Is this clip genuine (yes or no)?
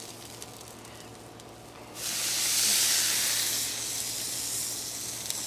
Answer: yes